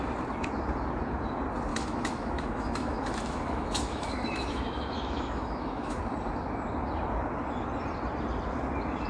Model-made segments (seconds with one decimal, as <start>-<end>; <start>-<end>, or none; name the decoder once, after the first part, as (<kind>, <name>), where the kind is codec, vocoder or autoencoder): 1.7-6.0 (autoencoder, DAC-VAE)